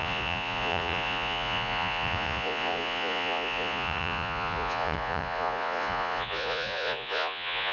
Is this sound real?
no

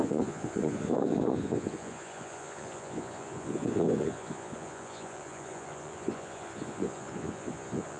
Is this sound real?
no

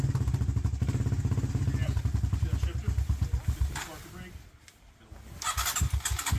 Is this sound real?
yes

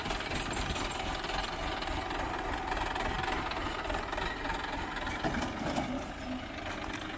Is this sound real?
yes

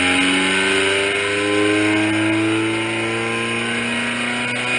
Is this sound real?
yes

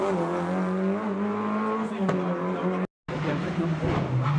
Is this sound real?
yes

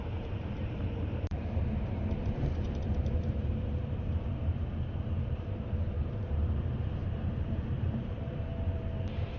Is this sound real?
no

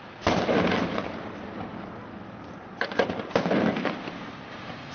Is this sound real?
yes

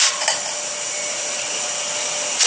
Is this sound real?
yes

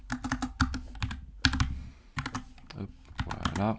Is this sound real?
yes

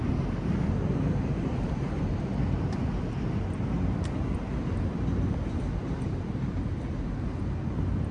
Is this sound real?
yes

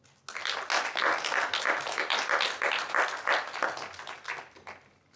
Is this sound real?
yes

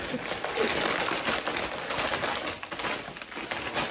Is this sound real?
yes